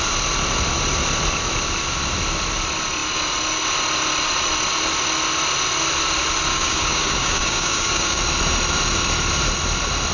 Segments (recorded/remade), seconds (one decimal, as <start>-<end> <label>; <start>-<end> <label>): 0.0-6.5 recorded; 6.5-8.2 remade; 8.2-10.1 recorded